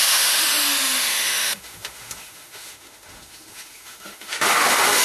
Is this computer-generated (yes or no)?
yes